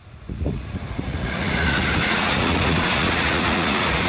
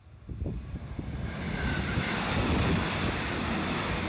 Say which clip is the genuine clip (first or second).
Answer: second